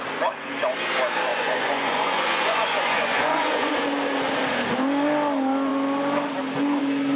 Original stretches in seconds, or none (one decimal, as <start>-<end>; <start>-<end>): 0.0-1.3; 3.7-7.2